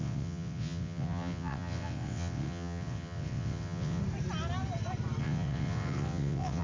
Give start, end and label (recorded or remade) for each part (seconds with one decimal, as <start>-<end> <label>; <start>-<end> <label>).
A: 0.0-4.0 remade; 4.0-5.2 recorded; 5.2-6.6 remade